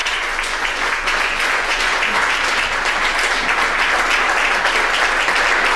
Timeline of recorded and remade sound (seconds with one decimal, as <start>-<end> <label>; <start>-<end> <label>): 0.0-2.3 remade; 2.3-5.8 recorded